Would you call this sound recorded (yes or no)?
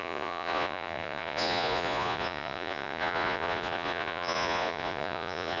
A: no